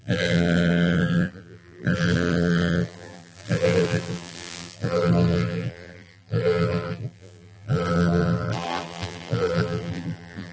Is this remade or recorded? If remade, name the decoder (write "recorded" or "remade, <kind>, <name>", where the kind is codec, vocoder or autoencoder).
remade, vocoder, BigVGAN v2